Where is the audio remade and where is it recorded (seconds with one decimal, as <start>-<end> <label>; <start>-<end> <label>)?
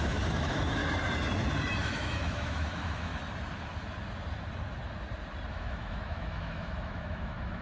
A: 0.0-0.8 remade; 0.8-1.8 recorded; 1.8-3.1 remade; 3.1-5.5 recorded; 5.5-7.6 remade